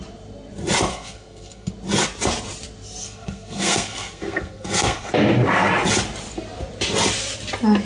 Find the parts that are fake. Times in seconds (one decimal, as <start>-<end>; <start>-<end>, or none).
0.9-1.7; 3.0-5.1